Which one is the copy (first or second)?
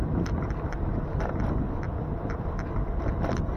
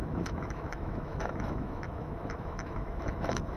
second